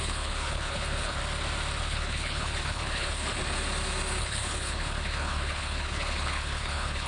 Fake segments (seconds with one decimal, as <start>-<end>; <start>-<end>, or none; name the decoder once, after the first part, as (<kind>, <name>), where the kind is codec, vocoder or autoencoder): 0.0-1.2 (codec, HILCodec); 1.8-3.4; 4.2-7.1